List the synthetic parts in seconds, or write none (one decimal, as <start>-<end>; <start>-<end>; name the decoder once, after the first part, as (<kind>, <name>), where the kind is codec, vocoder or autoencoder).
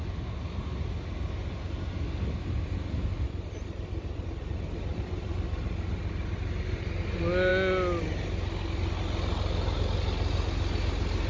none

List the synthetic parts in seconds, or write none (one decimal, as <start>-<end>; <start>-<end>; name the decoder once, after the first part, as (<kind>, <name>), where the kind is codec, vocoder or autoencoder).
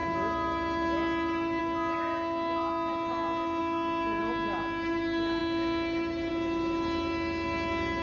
3.6-4.2 (codec, DAC)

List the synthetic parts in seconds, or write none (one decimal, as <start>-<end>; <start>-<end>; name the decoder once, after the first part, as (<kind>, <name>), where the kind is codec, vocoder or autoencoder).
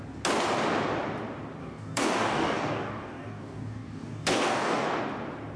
1.6-5.0 (codec, DAC)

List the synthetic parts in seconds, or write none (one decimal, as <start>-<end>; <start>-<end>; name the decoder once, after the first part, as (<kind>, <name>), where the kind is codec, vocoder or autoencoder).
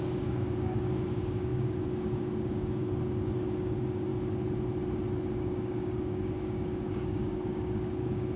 0.0-4.1 (codec, DAC); 5.4-8.4